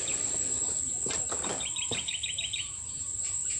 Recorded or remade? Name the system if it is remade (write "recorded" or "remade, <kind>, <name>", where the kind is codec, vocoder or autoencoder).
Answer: remade, vocoder, BigVGAN v2